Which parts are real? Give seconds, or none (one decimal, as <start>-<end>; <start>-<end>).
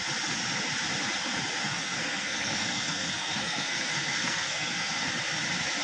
0.0-1.6; 5.1-5.8